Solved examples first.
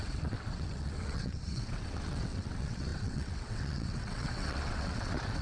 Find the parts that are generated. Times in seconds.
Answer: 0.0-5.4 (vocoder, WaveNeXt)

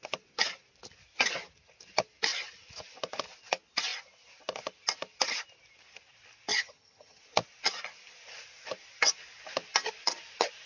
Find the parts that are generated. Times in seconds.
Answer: 6.5-7.2 (vocoder, HiFi-GAN)

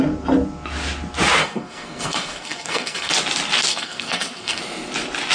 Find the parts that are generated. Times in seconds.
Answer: 1.4-3.1 (codec, SNAC); 3.7-4.6

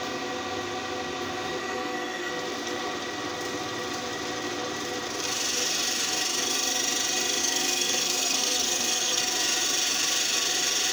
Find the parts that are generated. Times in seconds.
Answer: 1.6-2.3 (codec, SNAC); 7.4-9.2

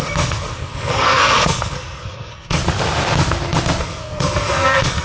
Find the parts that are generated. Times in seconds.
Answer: 0.0-2.6 (codec, SNAC); 3.8-5.0